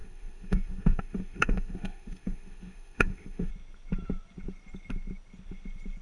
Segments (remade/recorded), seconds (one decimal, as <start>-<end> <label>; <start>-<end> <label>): 0.0-3.5 remade; 3.5-6.0 recorded